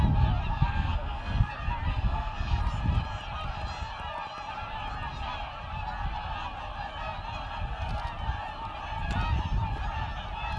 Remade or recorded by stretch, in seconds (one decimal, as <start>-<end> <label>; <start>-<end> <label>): 0.0-0.5 recorded; 0.5-1.5 remade; 1.5-1.9 recorded; 1.9-2.6 remade; 2.6-10.6 recorded